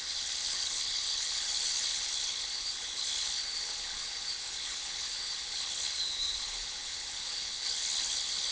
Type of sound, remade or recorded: remade